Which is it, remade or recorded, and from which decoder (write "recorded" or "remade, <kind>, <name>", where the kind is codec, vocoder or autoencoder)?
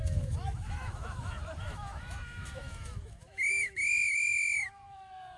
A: remade, autoencoder, DAC-VAE